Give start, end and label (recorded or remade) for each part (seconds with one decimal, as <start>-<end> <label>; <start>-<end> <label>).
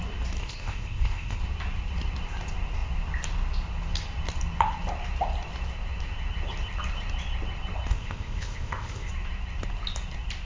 0.0-0.4 recorded; 0.4-1.4 remade; 1.4-7.9 recorded; 7.9-9.1 remade; 9.1-10.4 recorded